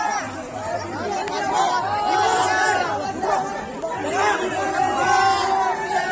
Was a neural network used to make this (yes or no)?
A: no